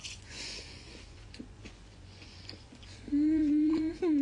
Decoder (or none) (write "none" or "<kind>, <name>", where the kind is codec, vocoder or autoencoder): vocoder, Vocos